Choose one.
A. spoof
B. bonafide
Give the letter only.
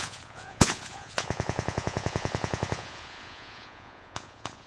A